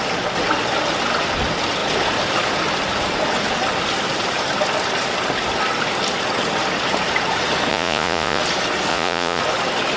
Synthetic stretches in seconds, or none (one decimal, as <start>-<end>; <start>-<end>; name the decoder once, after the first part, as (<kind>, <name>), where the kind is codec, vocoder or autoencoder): 7.7-8.4 (vocoder, Vocos); 8.9-9.4